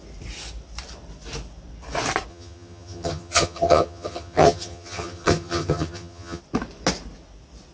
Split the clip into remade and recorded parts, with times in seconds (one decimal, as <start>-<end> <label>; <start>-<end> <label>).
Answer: 0.0-2.3 recorded; 2.3-6.4 remade; 6.4-7.7 recorded